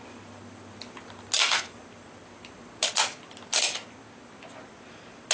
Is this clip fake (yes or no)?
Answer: no